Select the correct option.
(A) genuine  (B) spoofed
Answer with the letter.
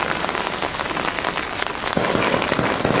A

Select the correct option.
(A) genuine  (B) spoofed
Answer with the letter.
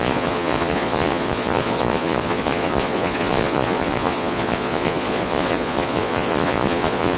B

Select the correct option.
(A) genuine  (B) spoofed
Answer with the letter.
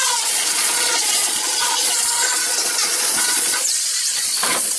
B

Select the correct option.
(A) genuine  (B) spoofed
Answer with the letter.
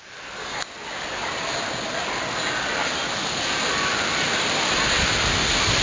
A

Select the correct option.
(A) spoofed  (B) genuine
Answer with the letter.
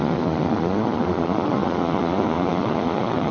A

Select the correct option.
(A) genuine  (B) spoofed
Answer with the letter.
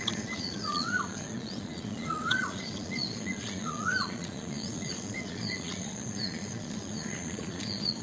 B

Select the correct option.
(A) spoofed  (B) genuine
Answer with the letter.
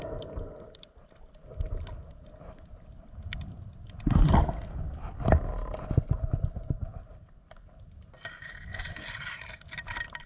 B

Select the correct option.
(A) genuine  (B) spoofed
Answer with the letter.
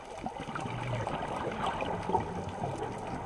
A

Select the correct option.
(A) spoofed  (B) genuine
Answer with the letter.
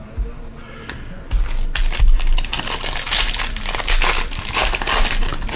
B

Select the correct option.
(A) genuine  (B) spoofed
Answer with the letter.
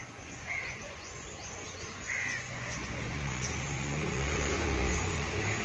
B